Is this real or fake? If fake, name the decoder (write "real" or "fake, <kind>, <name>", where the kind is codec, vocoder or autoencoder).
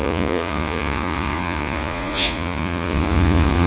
fake, vocoder, Vocos